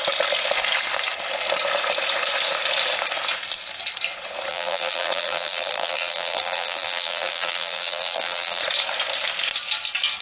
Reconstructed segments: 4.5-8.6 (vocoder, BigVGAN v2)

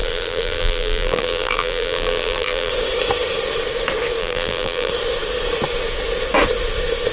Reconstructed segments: 0.0-2.7 (vocoder, BigVGAN v2); 4.2-4.9

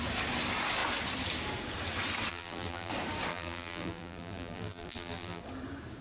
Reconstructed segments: 2.3-2.9 (vocoder, BigVGAN v2); 3.3-5.4

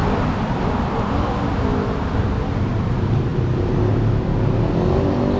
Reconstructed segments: 0.0-1.1 (vocoder, BigVGAN v2); 1.7-2.3